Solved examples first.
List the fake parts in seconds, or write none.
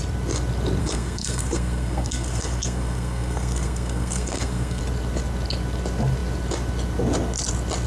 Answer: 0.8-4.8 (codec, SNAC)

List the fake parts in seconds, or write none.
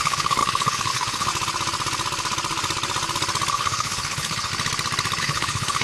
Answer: 0.0-1.3 (codec, HILCodec); 3.5-4.5; 5.2-5.8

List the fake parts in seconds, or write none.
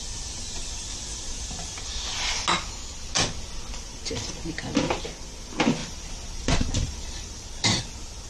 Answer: 5.8-7.8 (vocoder, BigVGAN v2)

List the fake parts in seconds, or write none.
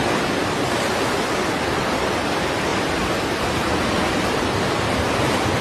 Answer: 0.4-1.4 (vocoder, BigVGAN v2); 2.7-3.9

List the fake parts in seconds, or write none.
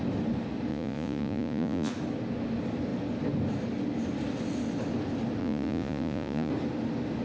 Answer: 0.7-1.9 (vocoder, Vocos); 5.4-6.5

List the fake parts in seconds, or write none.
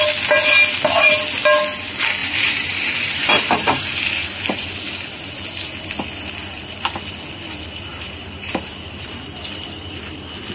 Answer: 2.2-3.8 (vocoder, BigVGAN v2); 7.9-9.1